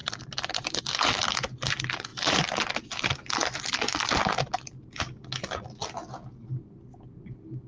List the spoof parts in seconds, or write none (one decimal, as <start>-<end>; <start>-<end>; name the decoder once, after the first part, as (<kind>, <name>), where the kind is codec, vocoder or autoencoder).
none